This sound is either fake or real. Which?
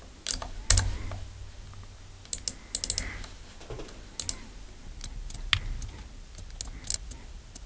real